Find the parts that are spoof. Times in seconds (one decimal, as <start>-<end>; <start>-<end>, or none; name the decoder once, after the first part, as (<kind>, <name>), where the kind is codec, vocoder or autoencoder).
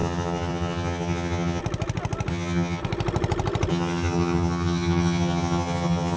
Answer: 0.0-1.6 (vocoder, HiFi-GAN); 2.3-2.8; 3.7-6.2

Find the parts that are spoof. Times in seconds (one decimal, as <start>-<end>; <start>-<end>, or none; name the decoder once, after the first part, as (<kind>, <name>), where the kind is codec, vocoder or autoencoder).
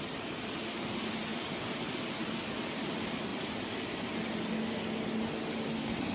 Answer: 1.3-2.9 (vocoder, BigVGAN v2); 3.3-4.5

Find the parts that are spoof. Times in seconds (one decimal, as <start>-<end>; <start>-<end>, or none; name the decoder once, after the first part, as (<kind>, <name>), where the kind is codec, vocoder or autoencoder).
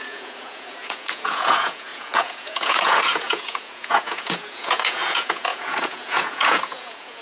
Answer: 0.0-7.2 (vocoder, Vocos)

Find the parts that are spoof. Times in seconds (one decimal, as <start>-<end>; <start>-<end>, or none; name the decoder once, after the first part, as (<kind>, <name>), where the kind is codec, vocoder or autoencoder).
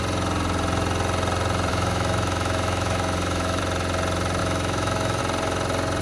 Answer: 1.7-3.6 (autoencoder, DAC-VAE); 4.4-5.2